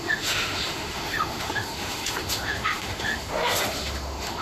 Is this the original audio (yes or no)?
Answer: no